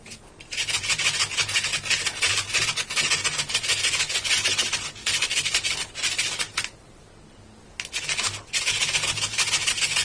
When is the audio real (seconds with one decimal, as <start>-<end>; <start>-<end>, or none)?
5.0-8.6